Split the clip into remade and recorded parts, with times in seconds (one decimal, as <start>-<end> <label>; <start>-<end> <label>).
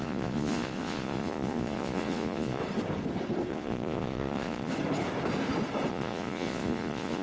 0.0-2.6 remade; 2.6-3.5 recorded; 3.5-4.7 remade; 4.7-5.9 recorded; 5.9-7.2 remade